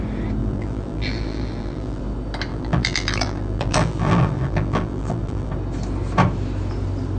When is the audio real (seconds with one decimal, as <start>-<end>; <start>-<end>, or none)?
0.0-0.4; 2.0-2.5; 5.5-7.2